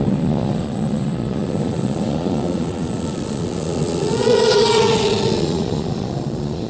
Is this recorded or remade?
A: remade